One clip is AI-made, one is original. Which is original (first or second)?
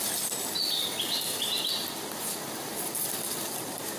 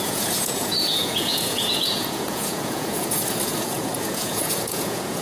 first